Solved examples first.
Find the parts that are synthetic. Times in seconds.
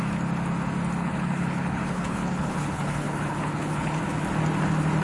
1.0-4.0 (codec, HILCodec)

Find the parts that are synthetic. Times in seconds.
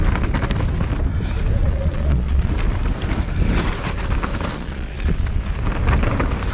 1.6-2.5 (vocoder, Vocos); 4.5-5.4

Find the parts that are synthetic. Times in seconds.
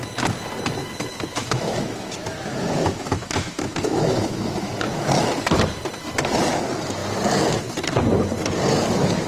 0.8-4.7 (autoencoder, DAC-VAE)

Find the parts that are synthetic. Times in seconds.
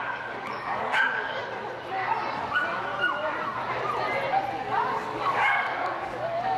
0.0-1.4 (codec, DAC); 2.4-2.9; 4.5-6.6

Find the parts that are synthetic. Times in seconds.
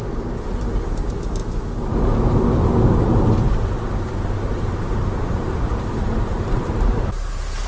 0.0-1.4 (vocoder, BigVGAN v2); 4.5-7.7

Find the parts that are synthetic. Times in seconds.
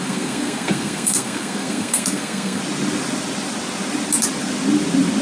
0.0-2.6 (codec, SNAC)